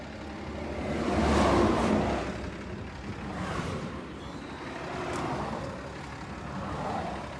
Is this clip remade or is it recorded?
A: recorded